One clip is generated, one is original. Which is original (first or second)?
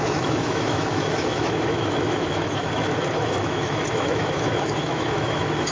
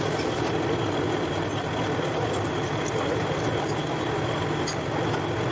second